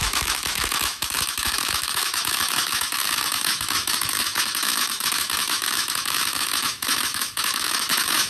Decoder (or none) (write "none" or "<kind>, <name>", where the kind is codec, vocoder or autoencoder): autoencoder, DAC-VAE